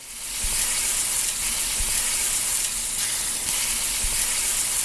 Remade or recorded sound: recorded